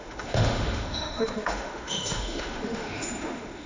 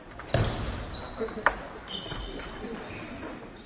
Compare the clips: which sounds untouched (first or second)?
second